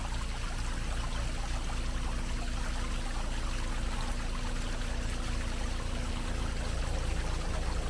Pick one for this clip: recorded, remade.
recorded